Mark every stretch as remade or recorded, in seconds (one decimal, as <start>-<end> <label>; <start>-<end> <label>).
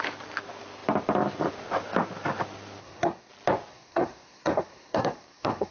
0.0-2.8 recorded; 2.8-3.3 remade; 3.3-3.7 recorded; 3.7-5.7 remade